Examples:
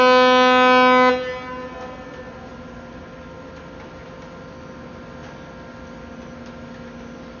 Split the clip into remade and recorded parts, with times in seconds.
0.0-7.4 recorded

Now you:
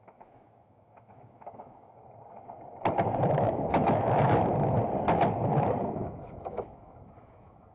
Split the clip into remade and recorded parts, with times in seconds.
0.0-2.0 remade; 2.0-3.3 recorded; 3.3-4.5 remade; 4.5-5.8 recorded; 5.8-7.7 remade

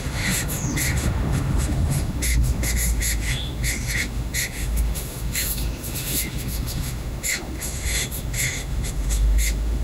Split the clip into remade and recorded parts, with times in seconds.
0.0-9.8 remade

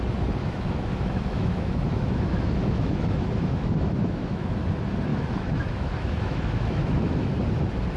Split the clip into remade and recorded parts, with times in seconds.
0.0-0.4 recorded; 0.4-4.5 remade; 4.5-5.1 recorded; 5.1-7.3 remade; 7.3-8.0 recorded

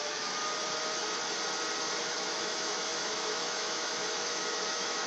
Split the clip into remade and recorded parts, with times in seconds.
0.0-0.4 remade; 0.4-2.0 recorded; 2.0-5.1 remade

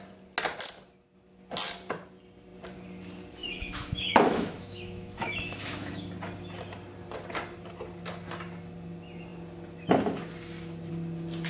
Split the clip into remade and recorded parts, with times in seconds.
0.0-3.4 recorded; 3.4-5.9 remade; 5.9-11.5 recorded